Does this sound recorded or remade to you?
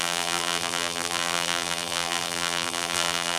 remade